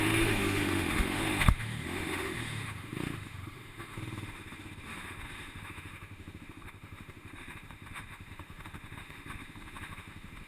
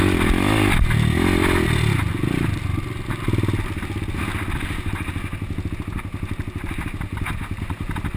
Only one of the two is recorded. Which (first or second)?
second